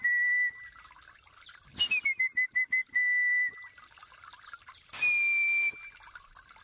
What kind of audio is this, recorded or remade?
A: recorded